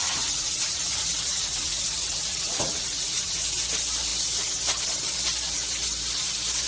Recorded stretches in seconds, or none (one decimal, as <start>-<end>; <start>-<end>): 3.5-6.7